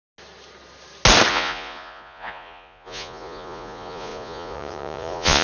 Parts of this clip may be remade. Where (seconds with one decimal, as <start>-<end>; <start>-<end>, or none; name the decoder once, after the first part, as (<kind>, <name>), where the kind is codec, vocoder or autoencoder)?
1.3-5.4 (vocoder, Vocos)